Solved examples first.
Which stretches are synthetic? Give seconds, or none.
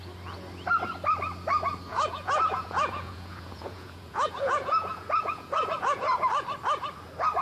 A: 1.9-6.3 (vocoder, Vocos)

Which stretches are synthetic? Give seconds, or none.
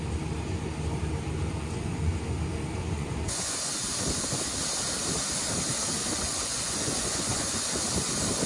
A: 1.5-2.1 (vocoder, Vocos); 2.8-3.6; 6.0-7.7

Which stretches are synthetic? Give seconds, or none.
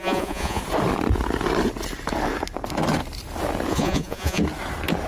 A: 0.0-0.6 (vocoder, Vocos); 3.7-4.4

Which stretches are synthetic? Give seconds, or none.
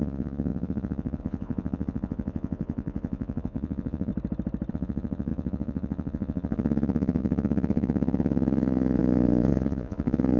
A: 0.0-4.1 (vocoder, Vocos); 4.7-10.4